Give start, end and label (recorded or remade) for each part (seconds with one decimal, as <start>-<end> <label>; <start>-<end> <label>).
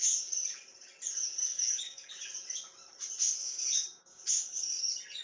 0.0-1.5 recorded; 1.5-2.1 remade; 2.1-3.4 recorded; 3.4-4.8 remade; 4.8-5.2 recorded